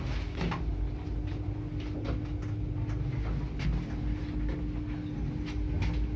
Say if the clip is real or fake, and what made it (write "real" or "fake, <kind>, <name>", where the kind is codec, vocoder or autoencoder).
real